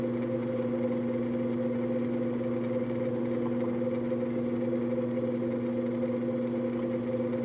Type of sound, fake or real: real